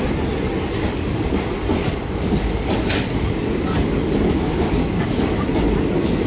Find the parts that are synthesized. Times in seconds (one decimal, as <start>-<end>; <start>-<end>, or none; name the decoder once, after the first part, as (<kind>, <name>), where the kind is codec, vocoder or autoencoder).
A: 0.9-1.4 (codec, DAC); 1.8-5.6